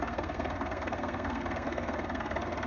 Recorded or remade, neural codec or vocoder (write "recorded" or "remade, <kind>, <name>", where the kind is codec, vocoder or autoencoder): remade, codec, SNAC